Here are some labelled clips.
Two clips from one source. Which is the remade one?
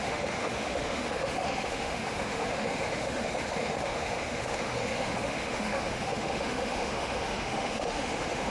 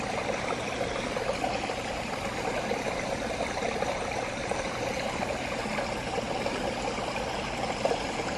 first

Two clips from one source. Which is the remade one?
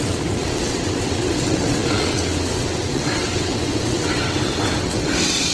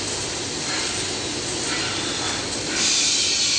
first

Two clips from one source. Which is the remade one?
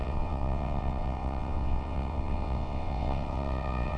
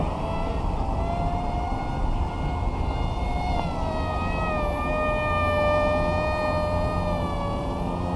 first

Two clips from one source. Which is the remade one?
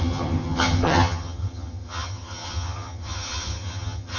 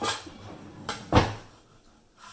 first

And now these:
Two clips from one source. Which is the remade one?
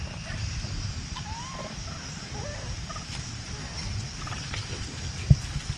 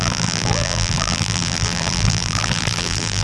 second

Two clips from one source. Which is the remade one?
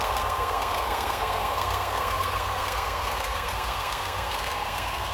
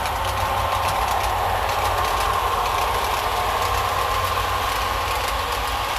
first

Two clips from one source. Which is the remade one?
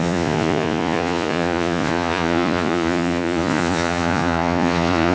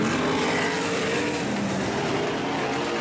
first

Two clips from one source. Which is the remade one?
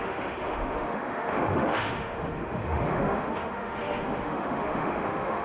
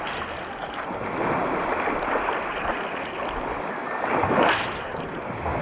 first